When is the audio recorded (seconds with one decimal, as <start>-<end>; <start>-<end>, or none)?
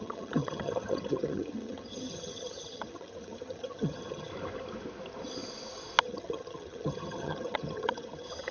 4.3-6.0